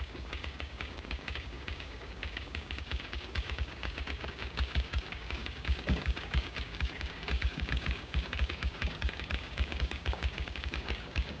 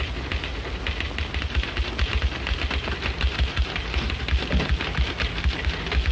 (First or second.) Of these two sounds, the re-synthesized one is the first